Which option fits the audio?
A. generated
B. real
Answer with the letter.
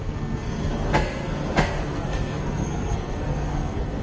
A